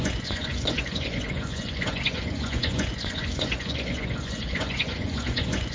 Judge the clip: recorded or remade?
remade